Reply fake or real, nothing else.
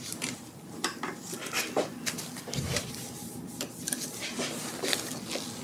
real